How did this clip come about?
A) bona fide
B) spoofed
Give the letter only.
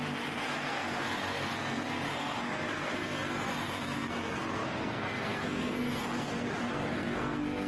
B